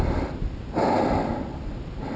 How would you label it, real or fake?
real